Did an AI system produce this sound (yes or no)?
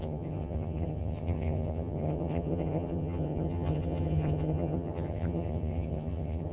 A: yes